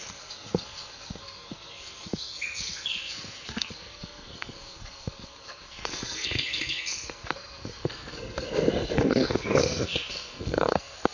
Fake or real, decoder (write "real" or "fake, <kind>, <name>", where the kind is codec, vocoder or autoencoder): fake, codec, SNAC